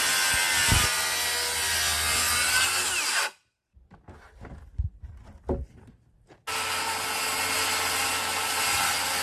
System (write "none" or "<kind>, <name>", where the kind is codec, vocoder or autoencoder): none